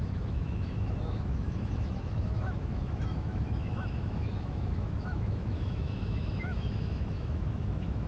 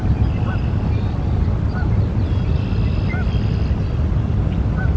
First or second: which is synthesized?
first